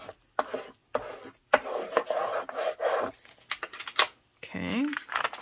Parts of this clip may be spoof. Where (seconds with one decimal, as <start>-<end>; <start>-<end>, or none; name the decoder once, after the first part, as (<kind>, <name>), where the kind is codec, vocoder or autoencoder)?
none